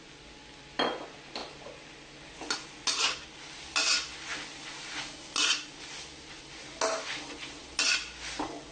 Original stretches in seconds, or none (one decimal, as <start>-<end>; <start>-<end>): 0.0-8.7